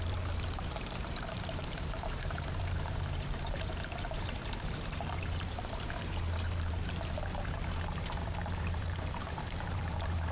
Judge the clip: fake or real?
fake